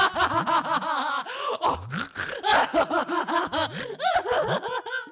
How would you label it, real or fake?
real